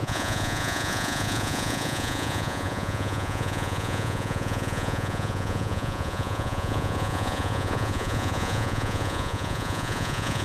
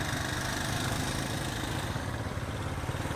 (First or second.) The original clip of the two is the second